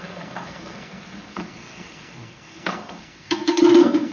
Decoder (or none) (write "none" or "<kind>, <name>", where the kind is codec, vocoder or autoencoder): codec, SNAC